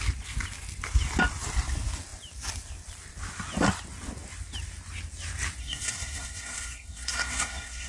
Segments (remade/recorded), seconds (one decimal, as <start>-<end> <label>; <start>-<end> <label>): 0.0-5.6 recorded; 5.6-7.9 remade

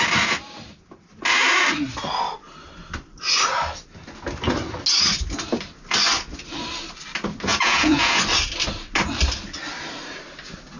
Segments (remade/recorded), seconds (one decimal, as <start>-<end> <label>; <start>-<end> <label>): 0.0-7.5 recorded; 7.5-8.2 remade; 8.2-10.8 recorded

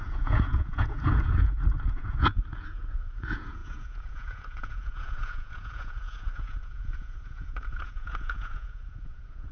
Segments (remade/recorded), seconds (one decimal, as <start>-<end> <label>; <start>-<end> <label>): 0.0-9.5 remade

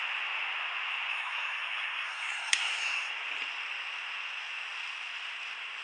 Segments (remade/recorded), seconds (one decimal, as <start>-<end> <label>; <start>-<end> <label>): 0.0-1.1 recorded; 1.1-3.1 remade; 3.1-5.8 recorded